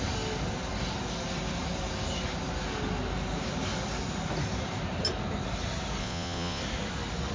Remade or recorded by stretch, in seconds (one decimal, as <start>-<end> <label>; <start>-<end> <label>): 0.0-6.0 recorded; 6.0-6.6 remade; 6.6-7.3 recorded